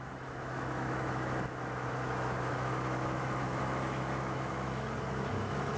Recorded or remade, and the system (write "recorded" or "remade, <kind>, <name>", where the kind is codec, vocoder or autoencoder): remade, autoencoder, DAC-VAE